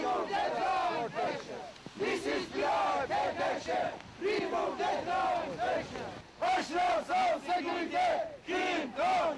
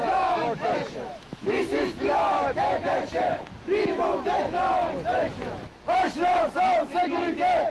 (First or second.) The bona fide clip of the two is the first